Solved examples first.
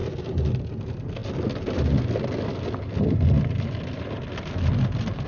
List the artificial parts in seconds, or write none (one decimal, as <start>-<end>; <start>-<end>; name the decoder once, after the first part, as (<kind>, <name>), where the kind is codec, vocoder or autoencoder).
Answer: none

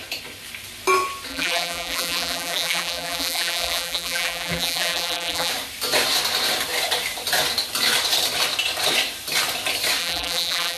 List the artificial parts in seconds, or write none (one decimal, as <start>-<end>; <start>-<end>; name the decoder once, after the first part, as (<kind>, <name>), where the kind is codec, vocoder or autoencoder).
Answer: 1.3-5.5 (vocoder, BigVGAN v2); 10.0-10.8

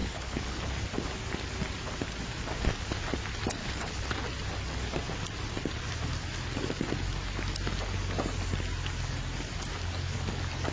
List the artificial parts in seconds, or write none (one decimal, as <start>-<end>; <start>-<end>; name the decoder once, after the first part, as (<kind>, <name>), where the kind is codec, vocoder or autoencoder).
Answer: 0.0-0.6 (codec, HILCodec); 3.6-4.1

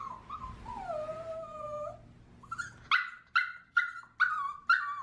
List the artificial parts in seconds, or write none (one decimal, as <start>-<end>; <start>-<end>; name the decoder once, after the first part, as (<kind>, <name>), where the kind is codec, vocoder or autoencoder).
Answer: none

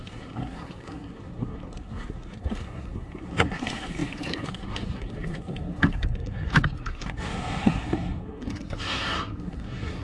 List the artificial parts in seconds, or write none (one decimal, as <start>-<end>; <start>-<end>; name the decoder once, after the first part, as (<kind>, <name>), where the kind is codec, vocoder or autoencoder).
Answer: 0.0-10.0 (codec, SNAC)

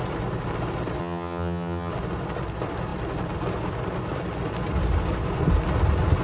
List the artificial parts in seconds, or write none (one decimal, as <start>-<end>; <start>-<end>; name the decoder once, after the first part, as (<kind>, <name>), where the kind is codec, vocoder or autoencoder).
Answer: 1.0-1.9 (vocoder, HiFi-GAN)